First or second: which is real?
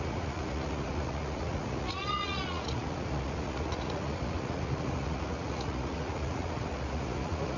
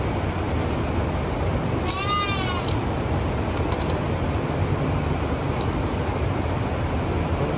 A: second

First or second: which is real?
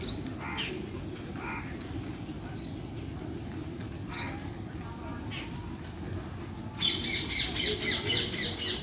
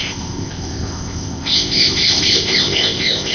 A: first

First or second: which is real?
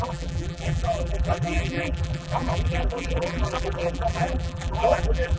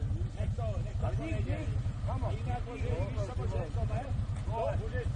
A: second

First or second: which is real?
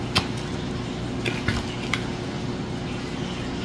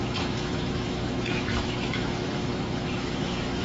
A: first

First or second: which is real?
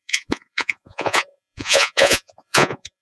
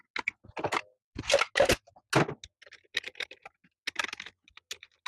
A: second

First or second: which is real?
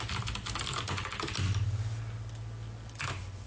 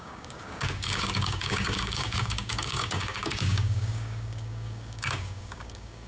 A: first